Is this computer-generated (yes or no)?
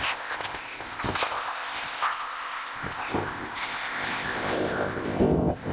yes